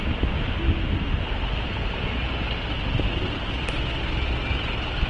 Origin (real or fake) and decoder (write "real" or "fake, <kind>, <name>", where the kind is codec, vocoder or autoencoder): real